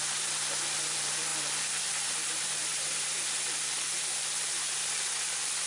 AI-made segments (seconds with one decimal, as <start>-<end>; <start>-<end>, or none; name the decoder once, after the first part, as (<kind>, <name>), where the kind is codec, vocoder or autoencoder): 0.0-5.7 (vocoder, BigVGAN v2)